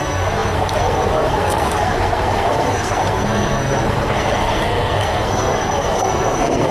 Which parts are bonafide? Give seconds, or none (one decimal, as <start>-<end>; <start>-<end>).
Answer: none